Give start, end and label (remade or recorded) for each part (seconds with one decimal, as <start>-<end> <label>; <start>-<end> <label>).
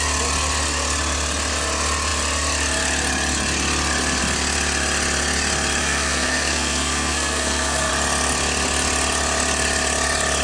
0.0-5.8 recorded; 5.8-7.9 remade; 7.9-10.4 recorded